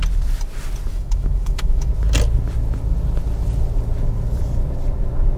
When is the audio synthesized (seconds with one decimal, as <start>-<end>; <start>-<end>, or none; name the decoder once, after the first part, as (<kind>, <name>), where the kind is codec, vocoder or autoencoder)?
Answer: 0.9-1.9 (autoencoder, DAC-VAE)